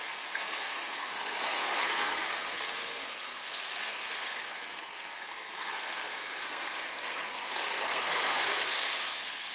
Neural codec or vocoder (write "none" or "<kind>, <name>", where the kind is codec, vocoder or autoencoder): codec, SNAC